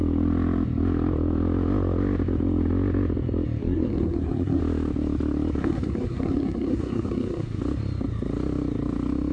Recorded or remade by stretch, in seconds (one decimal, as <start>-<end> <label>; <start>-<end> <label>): 0.0-3.6 recorded; 3.6-4.6 remade; 4.6-5.6 recorded; 5.6-7.6 remade; 7.6-9.3 recorded